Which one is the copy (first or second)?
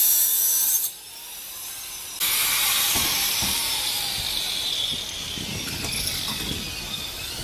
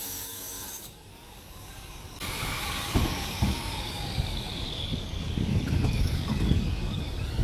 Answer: second